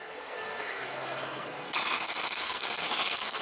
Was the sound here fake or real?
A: fake